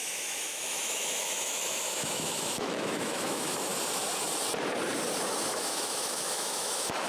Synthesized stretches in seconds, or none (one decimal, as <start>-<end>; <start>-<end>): 0.0-3.7; 5.5-7.1